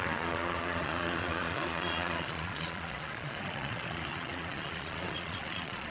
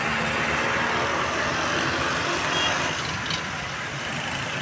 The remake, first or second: first